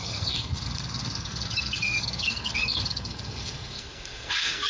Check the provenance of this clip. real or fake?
fake